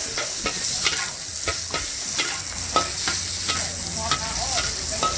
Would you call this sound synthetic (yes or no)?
no